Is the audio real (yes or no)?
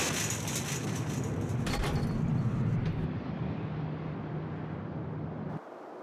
yes